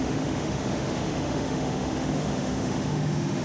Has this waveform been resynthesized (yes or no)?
yes